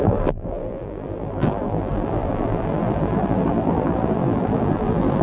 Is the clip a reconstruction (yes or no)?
yes